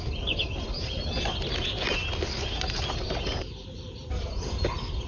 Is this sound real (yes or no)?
yes